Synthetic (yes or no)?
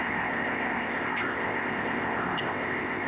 yes